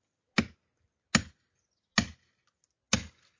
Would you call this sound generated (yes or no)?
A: no